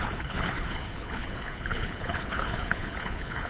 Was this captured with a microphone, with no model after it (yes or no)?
no